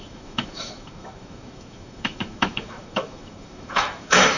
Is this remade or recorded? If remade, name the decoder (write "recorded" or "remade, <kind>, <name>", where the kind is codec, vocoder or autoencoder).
remade, autoencoder, DAC-VAE